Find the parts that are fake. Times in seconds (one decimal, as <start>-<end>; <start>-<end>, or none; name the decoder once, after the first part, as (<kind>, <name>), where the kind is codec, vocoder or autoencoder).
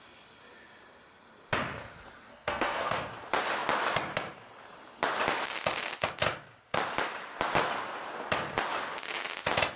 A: 2.3-3.1 (codec, SNAC)